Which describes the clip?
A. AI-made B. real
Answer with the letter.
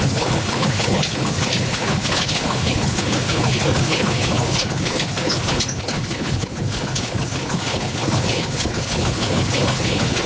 A